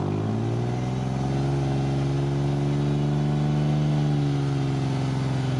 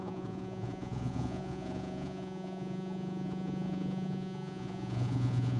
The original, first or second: first